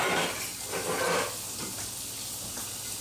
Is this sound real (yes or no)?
yes